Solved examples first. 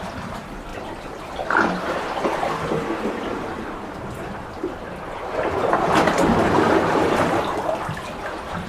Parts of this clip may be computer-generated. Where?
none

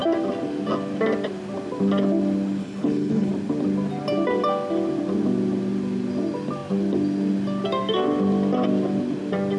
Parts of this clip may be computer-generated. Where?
2.6-3.3 (codec, HILCodec)